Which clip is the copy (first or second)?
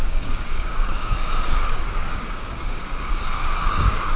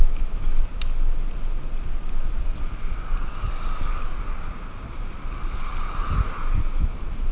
first